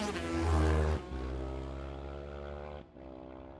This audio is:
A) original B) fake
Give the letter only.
A